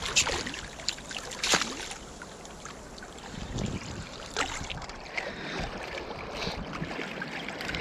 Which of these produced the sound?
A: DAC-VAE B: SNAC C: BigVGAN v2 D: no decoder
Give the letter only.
C